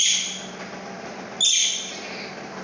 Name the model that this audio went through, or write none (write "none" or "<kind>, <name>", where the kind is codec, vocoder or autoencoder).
none